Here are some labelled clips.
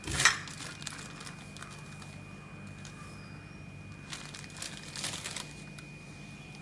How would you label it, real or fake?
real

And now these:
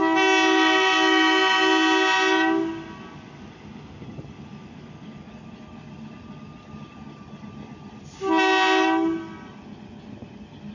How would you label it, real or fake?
real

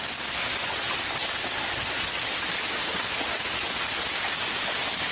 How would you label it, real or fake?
real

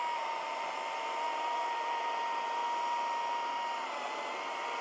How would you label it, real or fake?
real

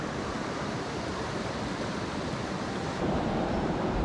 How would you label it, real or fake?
fake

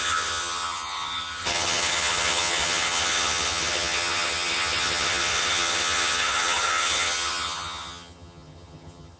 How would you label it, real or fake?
fake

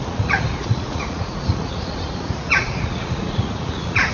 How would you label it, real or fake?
fake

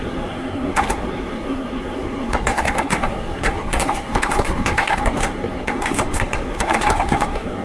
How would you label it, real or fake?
fake